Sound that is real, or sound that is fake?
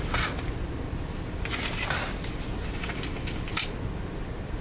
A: real